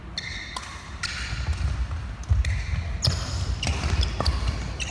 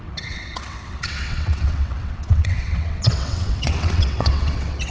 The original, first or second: first